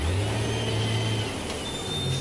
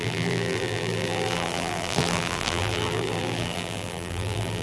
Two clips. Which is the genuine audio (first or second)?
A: first